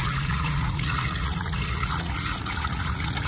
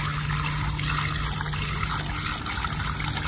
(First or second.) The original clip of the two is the second